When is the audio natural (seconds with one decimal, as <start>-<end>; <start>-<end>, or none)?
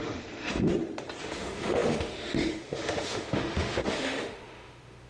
0.7-1.2